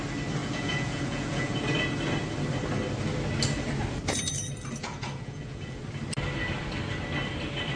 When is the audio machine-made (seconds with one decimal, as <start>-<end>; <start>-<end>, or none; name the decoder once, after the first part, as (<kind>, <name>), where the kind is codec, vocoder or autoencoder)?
0.4-1.6 (vocoder, Vocos); 4.8-5.8